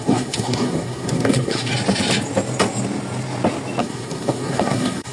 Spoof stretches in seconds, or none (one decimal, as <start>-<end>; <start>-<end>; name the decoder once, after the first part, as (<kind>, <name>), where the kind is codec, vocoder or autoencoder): 0.0-1.7 (codec, SNAC); 3.8-5.1